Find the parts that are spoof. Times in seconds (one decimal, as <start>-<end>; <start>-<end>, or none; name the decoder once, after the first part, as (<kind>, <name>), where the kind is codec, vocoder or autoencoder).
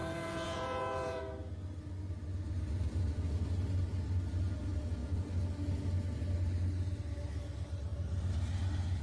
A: 0.0-1.2 (vocoder, Vocos)